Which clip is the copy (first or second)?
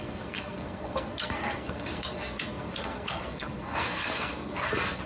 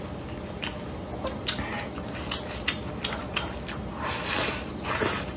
first